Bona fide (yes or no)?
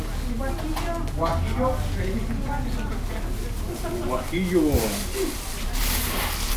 yes